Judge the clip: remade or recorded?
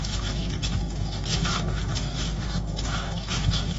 remade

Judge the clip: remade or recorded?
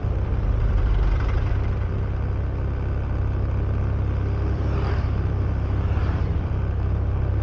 remade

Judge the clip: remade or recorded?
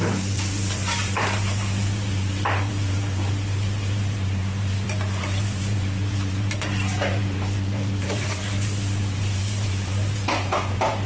remade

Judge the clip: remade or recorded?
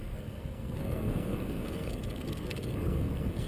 remade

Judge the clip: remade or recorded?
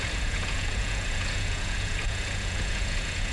remade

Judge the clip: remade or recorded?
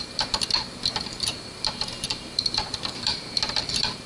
remade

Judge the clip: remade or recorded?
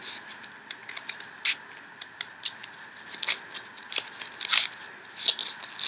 recorded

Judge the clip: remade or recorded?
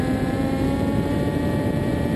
remade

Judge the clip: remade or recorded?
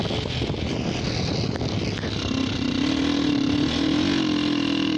recorded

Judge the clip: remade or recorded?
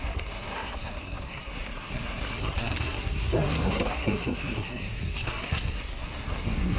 remade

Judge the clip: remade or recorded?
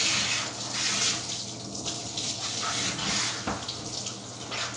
recorded